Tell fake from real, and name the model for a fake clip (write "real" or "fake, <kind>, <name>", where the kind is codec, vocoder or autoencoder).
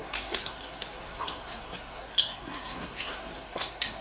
fake, codec, SNAC